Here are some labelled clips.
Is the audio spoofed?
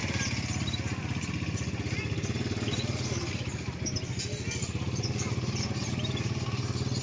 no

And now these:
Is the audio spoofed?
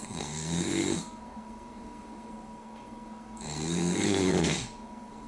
yes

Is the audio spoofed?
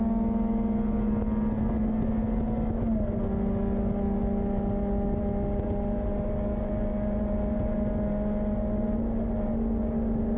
no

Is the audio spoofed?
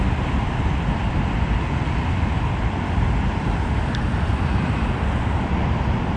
yes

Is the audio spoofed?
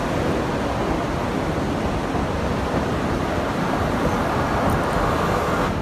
no